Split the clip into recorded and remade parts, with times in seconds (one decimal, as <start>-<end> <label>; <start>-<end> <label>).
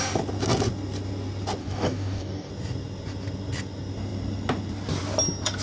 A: 0.0-1.6 recorded; 1.6-2.5 remade; 2.5-5.6 recorded